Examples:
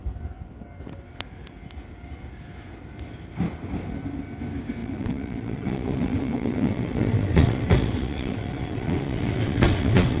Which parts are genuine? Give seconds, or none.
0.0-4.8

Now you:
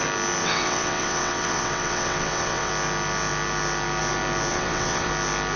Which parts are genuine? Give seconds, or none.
0.0-0.4; 2.7-4.5; 5.1-5.6